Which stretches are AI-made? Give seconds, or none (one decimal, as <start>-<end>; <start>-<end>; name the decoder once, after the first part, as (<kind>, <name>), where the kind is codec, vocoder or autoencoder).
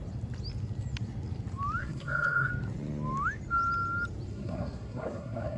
1.8-2.5 (codec, SNAC); 4.3-5.6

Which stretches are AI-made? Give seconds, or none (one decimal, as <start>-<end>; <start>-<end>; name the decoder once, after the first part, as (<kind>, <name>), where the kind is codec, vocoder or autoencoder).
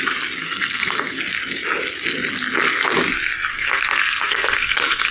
0.4-1.2 (codec, SNAC); 3.5-5.1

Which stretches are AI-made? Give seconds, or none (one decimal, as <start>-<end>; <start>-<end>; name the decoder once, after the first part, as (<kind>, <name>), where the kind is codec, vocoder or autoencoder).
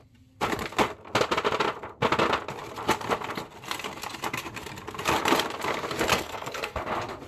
6.1-6.8 (codec, SNAC)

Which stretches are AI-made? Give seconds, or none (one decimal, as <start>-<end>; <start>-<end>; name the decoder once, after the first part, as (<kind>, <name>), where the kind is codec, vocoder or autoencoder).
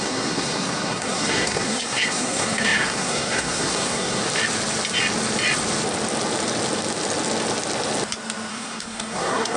0.0-4.2 (codec, SNAC); 8.5-9.6